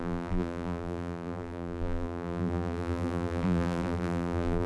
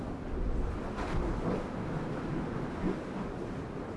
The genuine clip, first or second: second